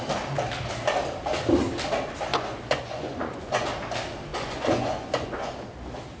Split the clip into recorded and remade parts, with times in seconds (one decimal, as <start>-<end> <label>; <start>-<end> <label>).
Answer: 0.0-2.3 recorded; 2.3-3.7 remade; 3.7-4.3 recorded; 4.3-5.5 remade; 5.5-6.2 recorded